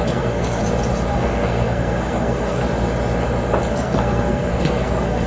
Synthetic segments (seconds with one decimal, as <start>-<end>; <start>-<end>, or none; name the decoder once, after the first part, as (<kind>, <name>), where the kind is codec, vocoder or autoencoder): 0.0-0.6 (codec, SNAC); 1.1-2.6; 3.7-5.3